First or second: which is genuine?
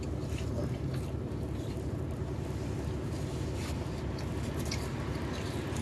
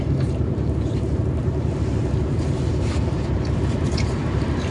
first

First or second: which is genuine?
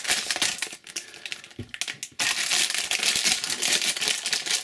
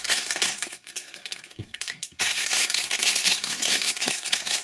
first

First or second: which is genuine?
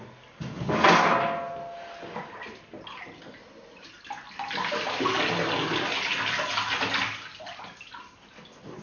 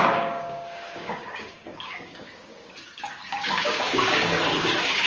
first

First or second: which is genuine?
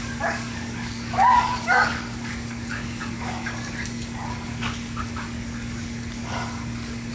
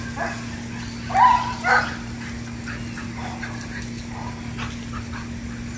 second